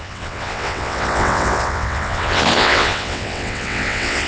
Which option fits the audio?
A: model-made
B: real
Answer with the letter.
A